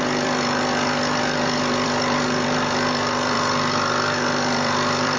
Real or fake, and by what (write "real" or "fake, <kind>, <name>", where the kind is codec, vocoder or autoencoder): fake, vocoder, BigVGAN v2